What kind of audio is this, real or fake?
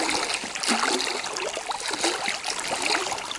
real